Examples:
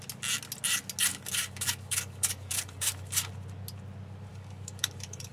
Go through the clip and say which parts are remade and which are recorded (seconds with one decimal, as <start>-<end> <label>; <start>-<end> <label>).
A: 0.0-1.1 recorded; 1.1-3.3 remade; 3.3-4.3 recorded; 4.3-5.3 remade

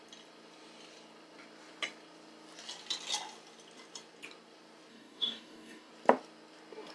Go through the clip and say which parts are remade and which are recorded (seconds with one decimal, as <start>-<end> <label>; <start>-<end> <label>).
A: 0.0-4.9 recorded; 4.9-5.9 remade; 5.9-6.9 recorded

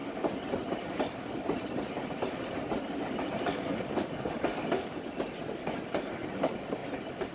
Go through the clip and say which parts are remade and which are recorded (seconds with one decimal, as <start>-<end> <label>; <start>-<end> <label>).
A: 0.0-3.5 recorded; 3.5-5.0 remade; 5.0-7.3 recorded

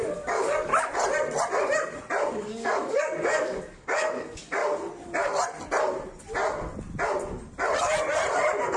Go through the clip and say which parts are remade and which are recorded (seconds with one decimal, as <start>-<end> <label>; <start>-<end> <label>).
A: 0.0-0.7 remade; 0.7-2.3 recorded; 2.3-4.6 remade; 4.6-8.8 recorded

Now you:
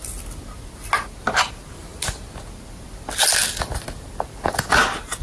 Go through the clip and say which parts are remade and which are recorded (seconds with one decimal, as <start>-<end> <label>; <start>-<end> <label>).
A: 0.0-5.2 recorded

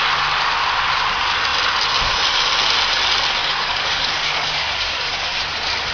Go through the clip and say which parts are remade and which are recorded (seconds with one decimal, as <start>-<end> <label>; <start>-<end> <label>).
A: 0.0-3.4 recorded; 3.4-5.4 remade; 5.4-5.9 recorded

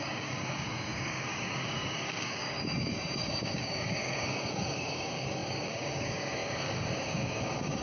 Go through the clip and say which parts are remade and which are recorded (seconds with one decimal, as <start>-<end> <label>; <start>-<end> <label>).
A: 0.0-7.8 remade